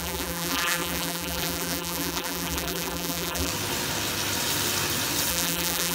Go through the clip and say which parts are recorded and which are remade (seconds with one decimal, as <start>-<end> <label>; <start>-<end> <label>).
0.0-3.5 remade; 3.5-5.3 recorded; 5.3-5.9 remade